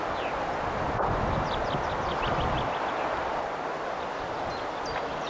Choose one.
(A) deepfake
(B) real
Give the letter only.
B